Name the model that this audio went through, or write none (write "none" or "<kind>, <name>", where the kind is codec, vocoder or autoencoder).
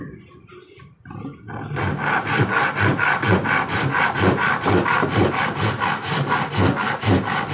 none